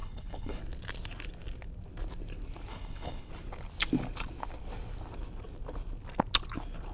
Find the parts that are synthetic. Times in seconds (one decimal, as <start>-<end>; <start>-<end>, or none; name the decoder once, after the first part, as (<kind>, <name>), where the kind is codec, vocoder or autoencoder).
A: 0.0-0.6 (codec, HILCodec); 2.7-3.3